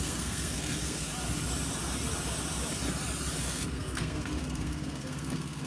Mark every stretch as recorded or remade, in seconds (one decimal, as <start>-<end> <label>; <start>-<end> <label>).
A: 0.0-1.1 remade; 1.1-3.4 recorded; 3.4-5.7 remade